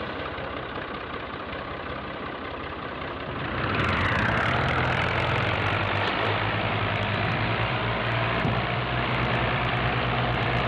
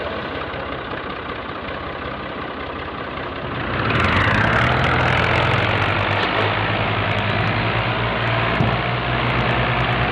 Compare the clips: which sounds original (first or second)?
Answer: second